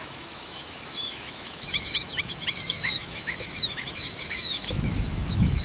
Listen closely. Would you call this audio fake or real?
fake